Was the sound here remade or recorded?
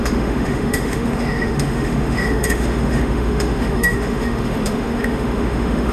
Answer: remade